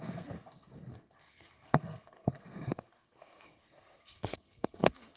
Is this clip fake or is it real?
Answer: fake